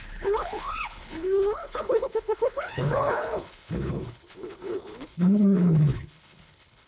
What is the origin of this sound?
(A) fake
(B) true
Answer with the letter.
A